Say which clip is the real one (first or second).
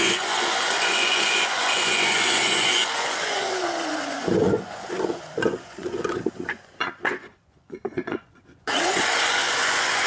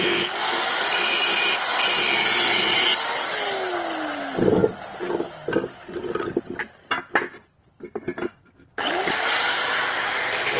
second